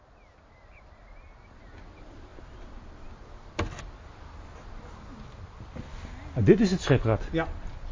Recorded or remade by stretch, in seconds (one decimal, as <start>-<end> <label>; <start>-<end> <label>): 0.0-7.9 recorded